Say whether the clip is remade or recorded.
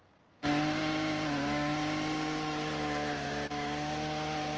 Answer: recorded